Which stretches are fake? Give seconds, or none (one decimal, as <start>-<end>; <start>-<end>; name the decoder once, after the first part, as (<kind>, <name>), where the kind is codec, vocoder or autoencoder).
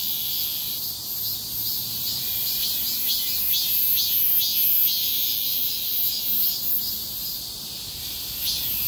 1.6-2.6 (vocoder, BigVGAN v2)